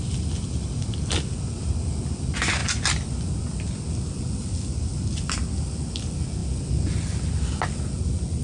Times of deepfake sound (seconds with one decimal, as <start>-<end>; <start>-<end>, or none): none